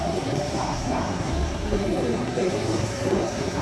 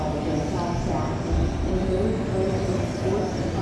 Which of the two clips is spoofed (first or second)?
first